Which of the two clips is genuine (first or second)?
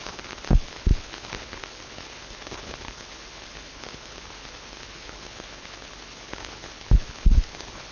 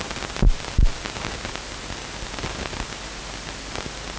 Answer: second